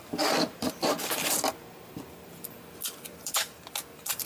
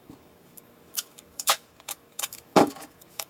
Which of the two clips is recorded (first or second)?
first